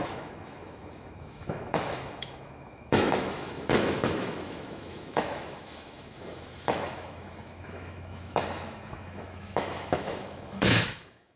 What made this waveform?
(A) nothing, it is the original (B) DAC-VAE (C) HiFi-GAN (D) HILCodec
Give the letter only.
B